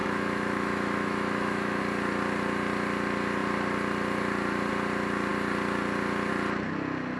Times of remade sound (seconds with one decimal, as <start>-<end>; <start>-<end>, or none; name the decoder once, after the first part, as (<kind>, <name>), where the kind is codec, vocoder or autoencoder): 0.0-1.8 (autoencoder, DAC-VAE)